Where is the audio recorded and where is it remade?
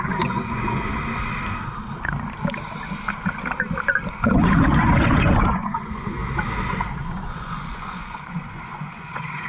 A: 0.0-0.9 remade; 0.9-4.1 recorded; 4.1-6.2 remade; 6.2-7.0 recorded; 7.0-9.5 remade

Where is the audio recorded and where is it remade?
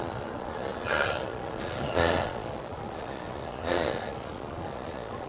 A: 0.0-5.3 remade